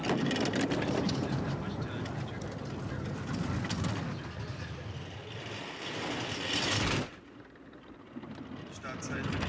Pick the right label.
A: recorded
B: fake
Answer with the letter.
A